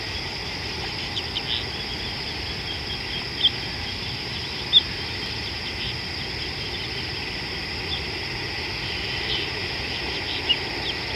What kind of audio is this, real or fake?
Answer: real